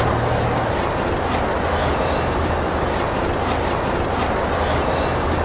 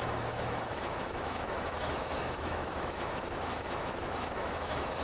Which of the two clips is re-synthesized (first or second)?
second